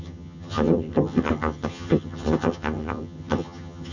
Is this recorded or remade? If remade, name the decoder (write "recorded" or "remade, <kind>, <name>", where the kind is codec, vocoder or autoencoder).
remade, vocoder, HiFi-GAN